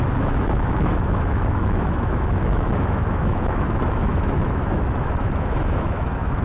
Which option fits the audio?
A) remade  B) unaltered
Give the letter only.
A